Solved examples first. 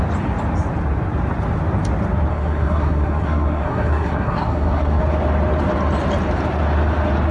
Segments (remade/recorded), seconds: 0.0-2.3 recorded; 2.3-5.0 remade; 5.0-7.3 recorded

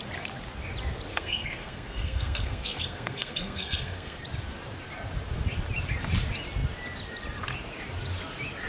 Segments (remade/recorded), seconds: 0.0-1.1 recorded; 1.1-4.2 remade; 4.2-8.7 recorded